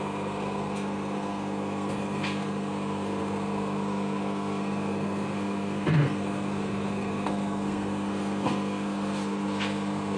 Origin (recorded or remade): remade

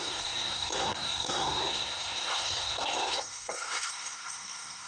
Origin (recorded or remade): remade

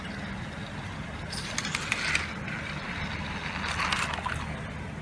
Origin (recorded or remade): recorded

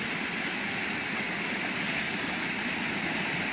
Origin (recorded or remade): recorded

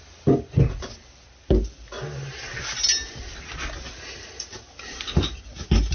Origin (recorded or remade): recorded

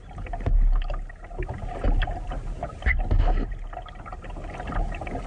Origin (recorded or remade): recorded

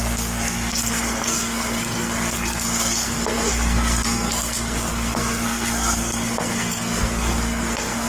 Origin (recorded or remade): remade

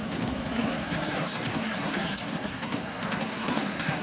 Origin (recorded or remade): remade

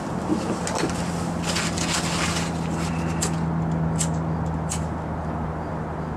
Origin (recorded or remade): recorded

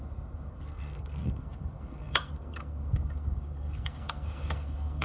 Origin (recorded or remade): remade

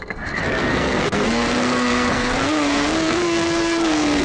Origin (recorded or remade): remade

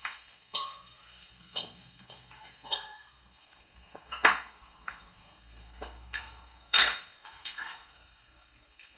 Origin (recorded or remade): remade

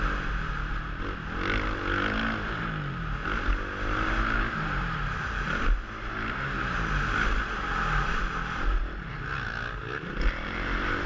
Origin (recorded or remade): recorded